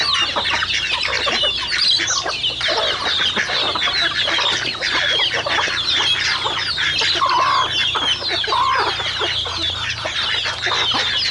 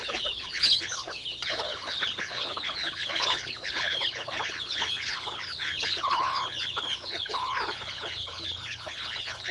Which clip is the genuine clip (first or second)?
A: first